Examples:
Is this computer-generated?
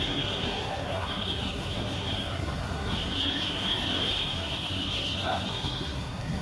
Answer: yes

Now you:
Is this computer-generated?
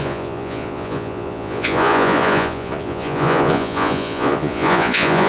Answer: yes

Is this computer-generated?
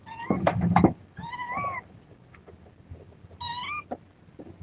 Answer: no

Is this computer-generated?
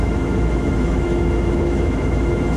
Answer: yes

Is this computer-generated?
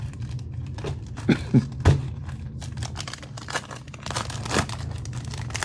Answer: no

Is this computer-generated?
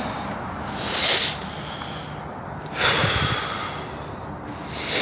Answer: no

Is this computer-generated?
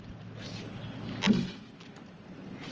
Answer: no